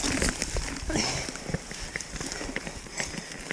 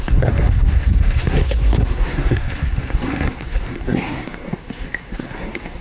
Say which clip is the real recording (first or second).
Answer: first